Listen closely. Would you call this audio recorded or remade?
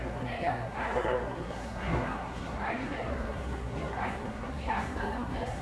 remade